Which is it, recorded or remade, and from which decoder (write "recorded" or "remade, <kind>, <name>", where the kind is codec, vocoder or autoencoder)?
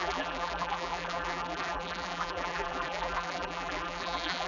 remade, vocoder, BigVGAN v2